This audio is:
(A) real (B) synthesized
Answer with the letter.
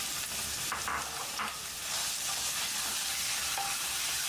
A